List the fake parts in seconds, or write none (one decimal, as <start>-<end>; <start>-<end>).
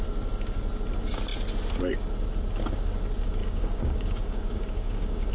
3.4-5.3